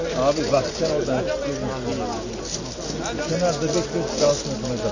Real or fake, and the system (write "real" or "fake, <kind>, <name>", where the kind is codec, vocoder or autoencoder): real